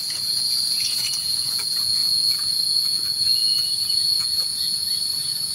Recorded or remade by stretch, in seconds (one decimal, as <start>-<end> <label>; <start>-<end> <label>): 0.0-5.5 remade